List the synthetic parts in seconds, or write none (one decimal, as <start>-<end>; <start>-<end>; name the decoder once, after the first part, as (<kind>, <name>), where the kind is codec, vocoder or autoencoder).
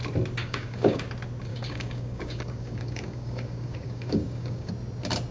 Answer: 0.4-1.0 (codec, DAC); 1.5-4.7